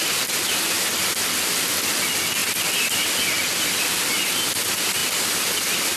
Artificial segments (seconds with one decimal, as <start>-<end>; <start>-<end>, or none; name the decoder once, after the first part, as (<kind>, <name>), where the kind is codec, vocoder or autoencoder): none